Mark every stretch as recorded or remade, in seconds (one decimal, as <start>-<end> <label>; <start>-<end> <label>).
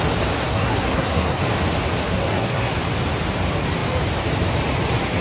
0.0-0.5 recorded; 0.5-1.4 remade; 1.4-2.1 recorded; 2.1-2.8 remade; 2.8-5.2 recorded